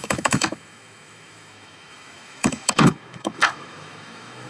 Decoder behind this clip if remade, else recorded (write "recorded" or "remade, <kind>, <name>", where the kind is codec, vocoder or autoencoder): remade, autoencoder, DAC-VAE